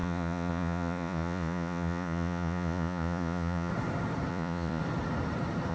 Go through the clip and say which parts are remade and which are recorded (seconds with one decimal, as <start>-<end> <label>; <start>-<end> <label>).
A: 0.0-3.7 remade; 3.7-4.3 recorded; 4.3-4.8 remade; 4.8-5.7 recorded